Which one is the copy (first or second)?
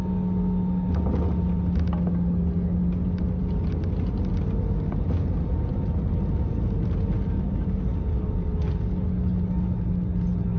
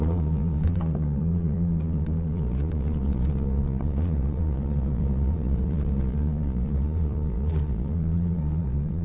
second